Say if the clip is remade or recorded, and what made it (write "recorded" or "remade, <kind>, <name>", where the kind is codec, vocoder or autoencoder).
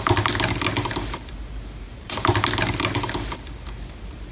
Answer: recorded